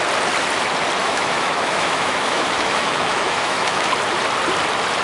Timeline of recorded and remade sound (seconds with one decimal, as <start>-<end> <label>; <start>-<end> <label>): 0.0-1.0 recorded; 1.0-3.9 remade; 3.9-5.0 recorded